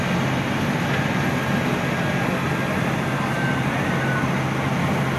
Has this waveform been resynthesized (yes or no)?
no